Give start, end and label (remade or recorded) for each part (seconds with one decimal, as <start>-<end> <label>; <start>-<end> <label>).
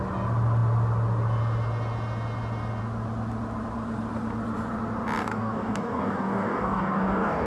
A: 0.0-5.2 recorded; 5.2-7.5 remade